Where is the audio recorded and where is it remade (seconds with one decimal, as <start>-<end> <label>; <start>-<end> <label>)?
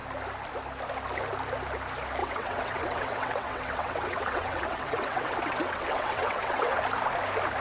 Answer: 0.0-2.2 recorded; 2.2-6.8 remade; 6.8-7.6 recorded